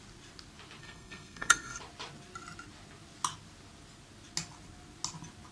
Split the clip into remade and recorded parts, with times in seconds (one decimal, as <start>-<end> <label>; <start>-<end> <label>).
0.0-0.8 recorded; 0.8-1.8 remade; 1.8-5.5 recorded